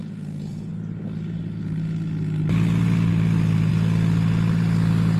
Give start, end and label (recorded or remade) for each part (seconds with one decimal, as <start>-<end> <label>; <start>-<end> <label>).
0.0-0.7 remade; 0.7-5.2 recorded